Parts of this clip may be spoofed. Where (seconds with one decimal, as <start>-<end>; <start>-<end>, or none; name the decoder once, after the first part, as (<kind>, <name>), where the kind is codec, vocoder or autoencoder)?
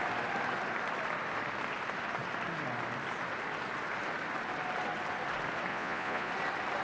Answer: 5.7-6.3 (vocoder, Vocos)